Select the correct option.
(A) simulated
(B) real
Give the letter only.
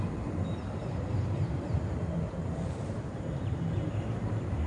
A